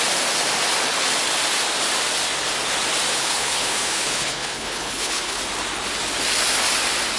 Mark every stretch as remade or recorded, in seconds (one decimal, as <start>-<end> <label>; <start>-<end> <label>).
0.0-3.1 recorded; 3.1-5.4 remade; 5.4-7.2 recorded